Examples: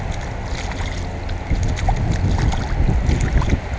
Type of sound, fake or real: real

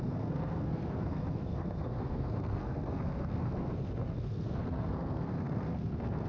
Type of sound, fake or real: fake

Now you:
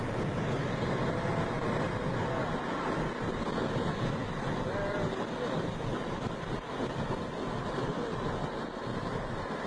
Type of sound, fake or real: real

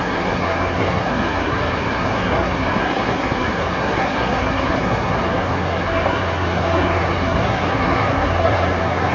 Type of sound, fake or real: fake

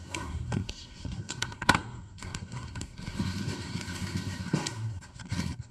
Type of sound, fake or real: fake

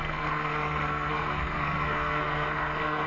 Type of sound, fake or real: fake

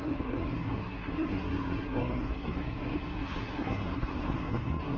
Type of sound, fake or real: fake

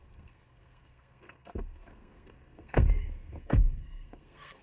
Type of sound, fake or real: fake